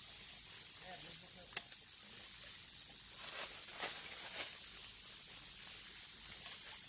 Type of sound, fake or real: real